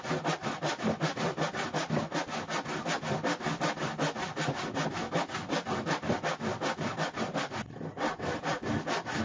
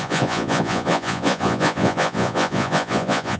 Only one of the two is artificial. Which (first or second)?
second